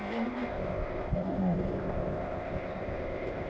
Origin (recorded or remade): remade